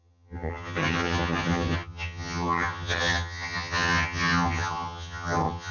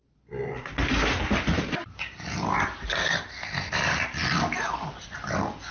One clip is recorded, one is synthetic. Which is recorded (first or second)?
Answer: second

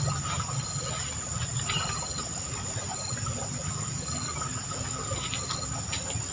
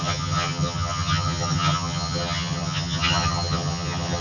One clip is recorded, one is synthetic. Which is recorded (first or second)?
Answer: first